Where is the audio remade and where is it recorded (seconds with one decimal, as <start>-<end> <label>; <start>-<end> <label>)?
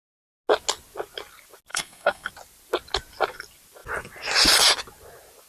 0.0-1.7 recorded; 1.7-2.3 remade; 2.3-5.5 recorded